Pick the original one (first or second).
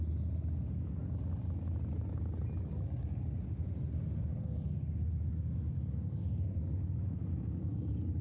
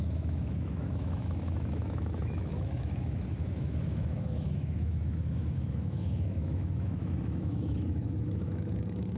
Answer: first